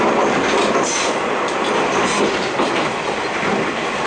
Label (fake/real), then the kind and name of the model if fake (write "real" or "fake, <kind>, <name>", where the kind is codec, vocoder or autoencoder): fake, vocoder, BigVGAN v2